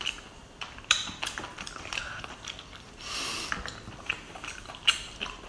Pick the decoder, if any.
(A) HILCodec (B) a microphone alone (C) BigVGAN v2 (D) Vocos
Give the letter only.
C